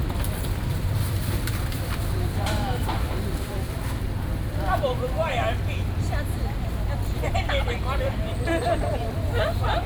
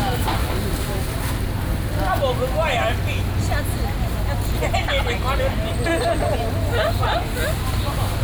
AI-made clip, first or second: first